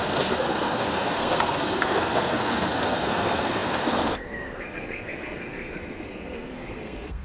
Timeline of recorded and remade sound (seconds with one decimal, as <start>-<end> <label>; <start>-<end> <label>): 0.0-7.2 remade